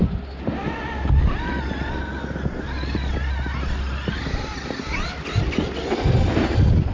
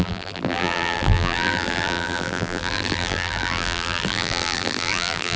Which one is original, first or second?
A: first